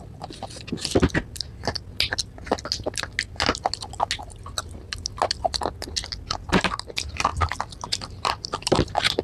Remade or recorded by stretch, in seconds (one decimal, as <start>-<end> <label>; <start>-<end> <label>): 0.0-7.3 recorded; 7.3-9.2 remade

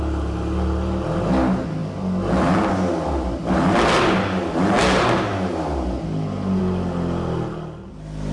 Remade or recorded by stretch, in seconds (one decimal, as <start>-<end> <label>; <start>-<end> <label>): 0.0-8.3 recorded

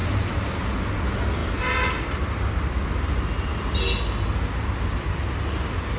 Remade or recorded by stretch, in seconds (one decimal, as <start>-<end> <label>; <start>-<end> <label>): 0.0-6.0 recorded

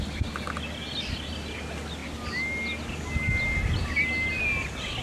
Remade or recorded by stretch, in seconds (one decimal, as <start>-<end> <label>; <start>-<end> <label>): 0.0-5.0 recorded

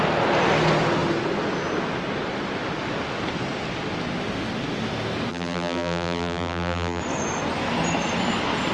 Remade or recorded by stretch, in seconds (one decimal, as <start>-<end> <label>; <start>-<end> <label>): 0.0-5.3 recorded; 5.3-7.0 remade; 7.0-8.7 recorded

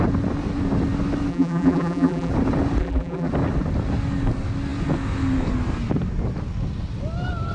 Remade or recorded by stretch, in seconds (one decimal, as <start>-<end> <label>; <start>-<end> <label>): 0.0-1.3 recorded; 1.3-2.3 remade; 2.3-2.8 recorded; 2.8-3.3 remade; 3.3-7.5 recorded

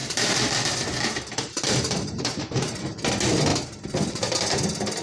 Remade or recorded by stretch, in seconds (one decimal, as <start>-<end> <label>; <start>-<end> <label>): 0.0-2.7 remade; 2.7-5.0 recorded

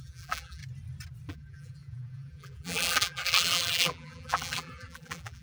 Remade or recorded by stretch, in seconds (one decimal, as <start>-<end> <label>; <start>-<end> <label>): 0.0-0.6 remade; 0.6-1.3 recorded; 1.3-5.4 remade